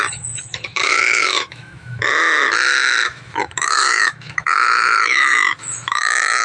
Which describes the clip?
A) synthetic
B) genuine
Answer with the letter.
A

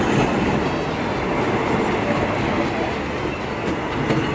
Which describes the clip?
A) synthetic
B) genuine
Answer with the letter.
B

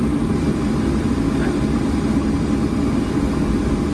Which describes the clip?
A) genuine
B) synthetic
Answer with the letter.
A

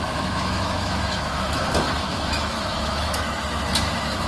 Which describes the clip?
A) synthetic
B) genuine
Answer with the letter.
A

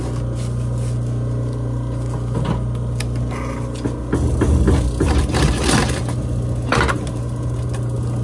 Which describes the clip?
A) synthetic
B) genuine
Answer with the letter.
B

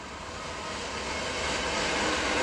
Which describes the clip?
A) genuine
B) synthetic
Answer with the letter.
A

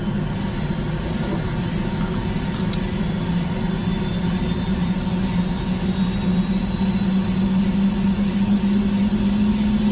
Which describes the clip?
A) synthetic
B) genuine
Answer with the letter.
B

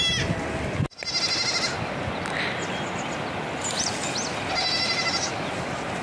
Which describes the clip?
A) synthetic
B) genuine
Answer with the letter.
B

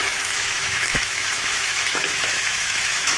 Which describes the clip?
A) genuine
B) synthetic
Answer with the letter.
B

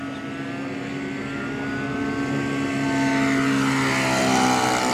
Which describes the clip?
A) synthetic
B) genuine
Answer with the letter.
B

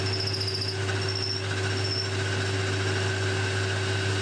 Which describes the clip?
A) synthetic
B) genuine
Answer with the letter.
B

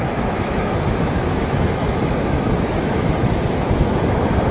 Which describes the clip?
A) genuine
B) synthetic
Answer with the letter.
B